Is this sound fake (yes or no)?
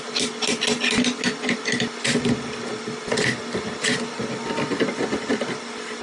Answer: no